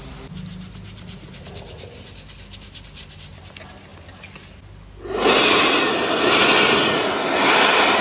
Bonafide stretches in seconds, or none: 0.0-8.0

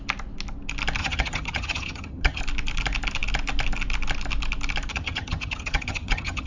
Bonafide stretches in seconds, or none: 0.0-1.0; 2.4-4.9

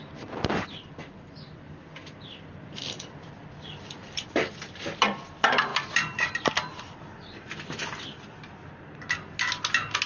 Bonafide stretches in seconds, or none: 4.5-10.1